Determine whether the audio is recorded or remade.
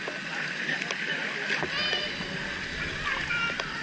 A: recorded